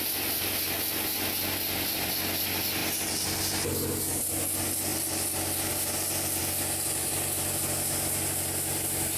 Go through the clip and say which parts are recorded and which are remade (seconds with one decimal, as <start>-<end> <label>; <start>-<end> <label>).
0.0-9.2 recorded